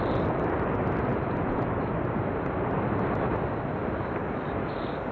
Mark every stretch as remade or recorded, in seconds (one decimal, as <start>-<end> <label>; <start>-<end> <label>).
0.0-1.1 recorded; 1.1-1.7 remade; 1.7-5.1 recorded